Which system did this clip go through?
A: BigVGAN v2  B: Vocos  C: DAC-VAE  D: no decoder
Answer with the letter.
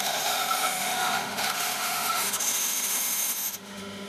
C